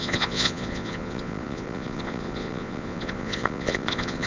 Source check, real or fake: fake